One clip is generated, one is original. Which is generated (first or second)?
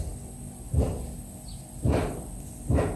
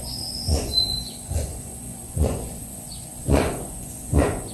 second